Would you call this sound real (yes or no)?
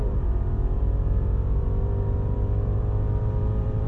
no